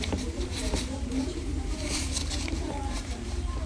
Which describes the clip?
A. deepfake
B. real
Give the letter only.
A